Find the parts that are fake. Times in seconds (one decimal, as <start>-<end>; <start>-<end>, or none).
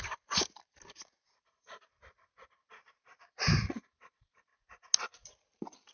0.0-4.5; 5.0-5.9